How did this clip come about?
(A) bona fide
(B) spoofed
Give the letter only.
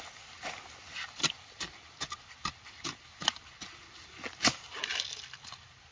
A